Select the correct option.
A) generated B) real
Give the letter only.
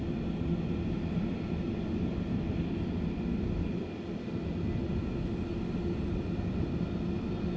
B